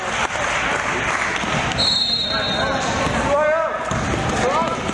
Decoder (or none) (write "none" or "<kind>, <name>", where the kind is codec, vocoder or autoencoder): none